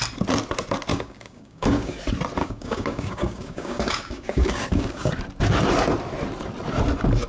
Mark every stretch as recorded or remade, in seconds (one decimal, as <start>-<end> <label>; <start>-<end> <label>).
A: 0.0-0.9 recorded; 0.9-2.0 remade; 2.0-2.4 recorded; 2.4-5.1 remade; 5.1-7.3 recorded